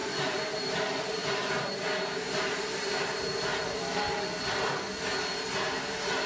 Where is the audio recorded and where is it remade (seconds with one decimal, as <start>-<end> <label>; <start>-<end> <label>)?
0.0-3.6 remade; 3.6-6.3 recorded